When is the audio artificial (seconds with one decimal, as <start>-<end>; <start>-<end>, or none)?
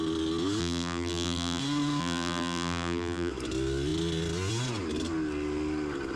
0.6-1.6; 2.0-3.3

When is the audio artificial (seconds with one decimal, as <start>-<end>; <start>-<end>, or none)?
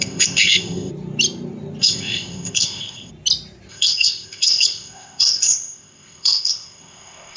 0.0-0.9; 1.8-3.1; 3.7-7.4